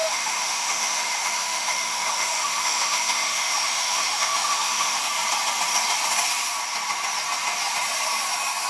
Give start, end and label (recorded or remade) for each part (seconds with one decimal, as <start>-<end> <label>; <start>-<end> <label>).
0.0-5.0 remade; 5.0-8.7 recorded